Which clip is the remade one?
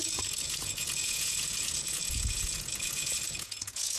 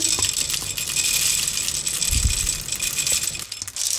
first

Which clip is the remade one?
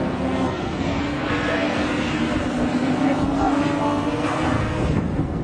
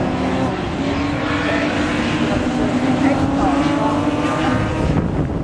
first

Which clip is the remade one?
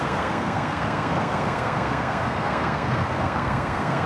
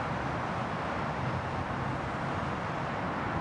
first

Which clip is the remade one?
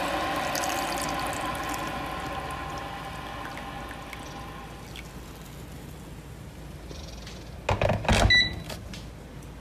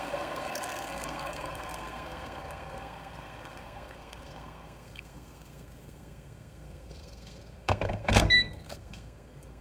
second